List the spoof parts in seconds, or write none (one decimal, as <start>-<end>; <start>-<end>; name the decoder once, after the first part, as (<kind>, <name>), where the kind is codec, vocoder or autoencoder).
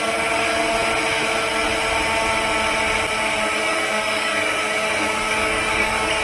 3.6-6.2 (codec, DAC)